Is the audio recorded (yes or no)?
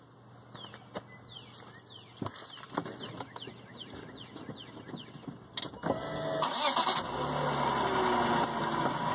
yes